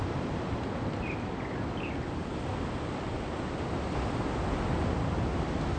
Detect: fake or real real